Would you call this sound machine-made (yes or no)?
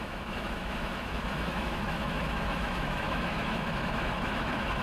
yes